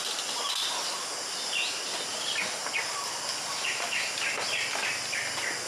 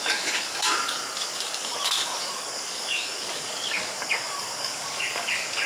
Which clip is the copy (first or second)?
second